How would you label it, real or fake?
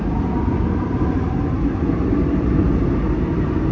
real